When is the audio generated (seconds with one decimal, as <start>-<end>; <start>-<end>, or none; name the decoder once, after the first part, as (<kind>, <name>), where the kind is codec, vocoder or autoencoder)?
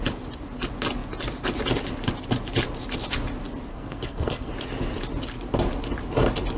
3.7-4.5 (codec, SNAC)